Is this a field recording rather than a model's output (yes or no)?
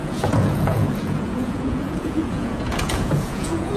no